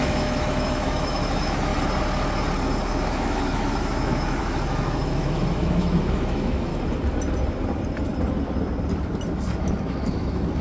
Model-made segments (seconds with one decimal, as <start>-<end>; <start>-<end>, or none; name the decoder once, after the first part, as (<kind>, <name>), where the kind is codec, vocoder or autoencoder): 0.0-1.7 (autoencoder, DAC-VAE); 2.9-6.7; 9.6-10.6